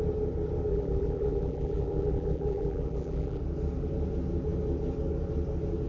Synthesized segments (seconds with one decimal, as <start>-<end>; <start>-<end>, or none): 0.7-3.4